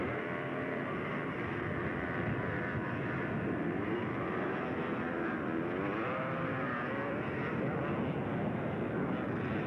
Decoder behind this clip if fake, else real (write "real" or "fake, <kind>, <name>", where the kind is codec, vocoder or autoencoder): real